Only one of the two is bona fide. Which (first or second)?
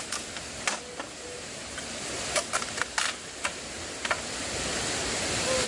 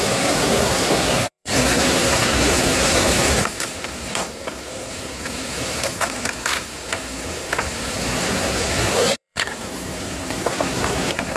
first